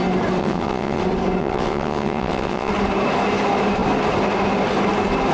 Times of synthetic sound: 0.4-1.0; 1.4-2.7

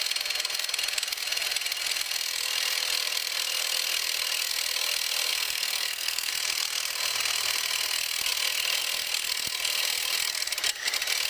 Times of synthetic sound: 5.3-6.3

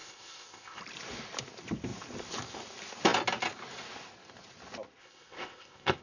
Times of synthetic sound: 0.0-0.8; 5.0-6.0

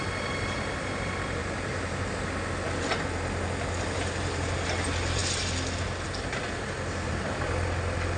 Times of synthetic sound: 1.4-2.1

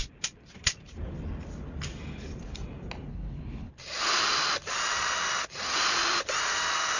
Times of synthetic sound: 3.1-3.7